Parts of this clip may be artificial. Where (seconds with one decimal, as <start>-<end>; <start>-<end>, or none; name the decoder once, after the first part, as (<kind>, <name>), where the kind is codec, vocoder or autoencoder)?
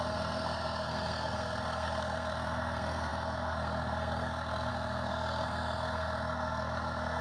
0.0-7.2 (codec, SNAC)